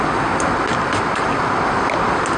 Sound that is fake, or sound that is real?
real